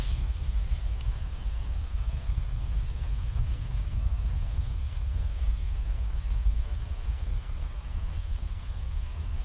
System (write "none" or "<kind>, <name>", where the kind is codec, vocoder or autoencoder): codec, SNAC